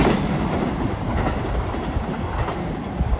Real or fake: real